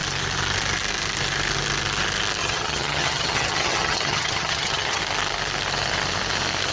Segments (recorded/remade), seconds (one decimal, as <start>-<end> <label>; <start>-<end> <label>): 0.0-2.4 recorded; 2.4-5.0 remade; 5.0-6.7 recorded